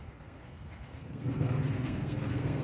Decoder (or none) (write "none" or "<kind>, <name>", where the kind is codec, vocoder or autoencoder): codec, SNAC